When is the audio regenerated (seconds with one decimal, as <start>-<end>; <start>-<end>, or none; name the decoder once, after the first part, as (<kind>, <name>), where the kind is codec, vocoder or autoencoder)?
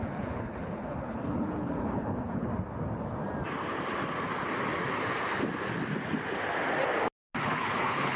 0.0-2.5 (codec, HILCodec); 7.4-8.2